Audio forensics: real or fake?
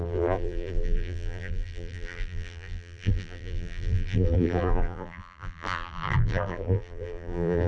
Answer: fake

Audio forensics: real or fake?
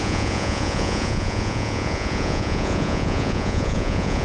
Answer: fake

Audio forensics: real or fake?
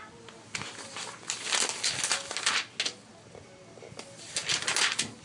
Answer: real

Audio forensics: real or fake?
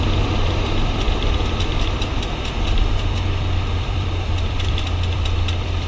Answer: fake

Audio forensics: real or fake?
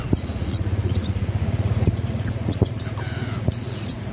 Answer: fake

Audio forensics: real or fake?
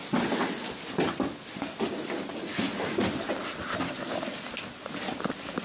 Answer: real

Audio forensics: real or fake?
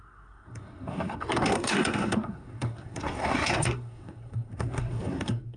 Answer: fake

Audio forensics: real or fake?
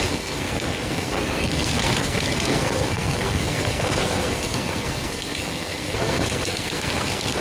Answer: fake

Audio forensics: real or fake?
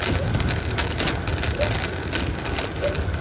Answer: real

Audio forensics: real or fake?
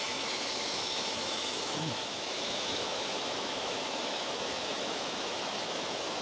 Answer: fake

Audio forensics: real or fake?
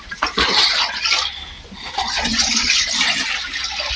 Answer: real